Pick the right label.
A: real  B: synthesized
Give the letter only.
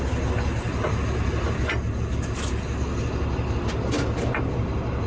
A